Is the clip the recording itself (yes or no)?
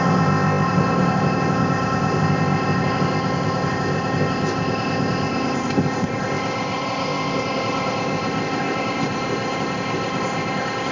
no